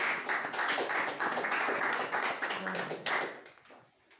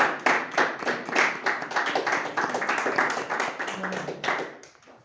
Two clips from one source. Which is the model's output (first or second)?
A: first